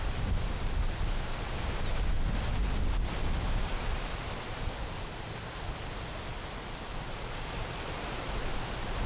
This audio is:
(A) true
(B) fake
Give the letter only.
A